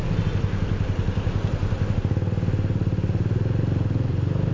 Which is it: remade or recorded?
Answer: recorded